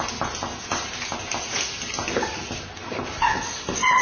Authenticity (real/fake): real